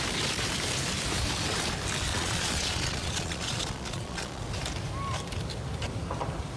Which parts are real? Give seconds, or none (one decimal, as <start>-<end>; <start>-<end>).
0.0-2.1; 4.4-6.6